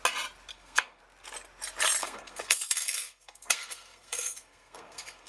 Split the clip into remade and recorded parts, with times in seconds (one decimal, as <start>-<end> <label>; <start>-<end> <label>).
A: 0.0-0.5 recorded; 0.5-1.0 remade; 1.0-2.0 recorded; 2.0-5.3 remade